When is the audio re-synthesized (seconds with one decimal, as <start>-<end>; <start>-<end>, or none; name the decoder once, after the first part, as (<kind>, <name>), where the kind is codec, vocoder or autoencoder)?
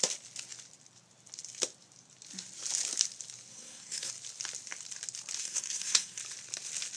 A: 3.5-4.1 (codec, SNAC); 5.4-6.2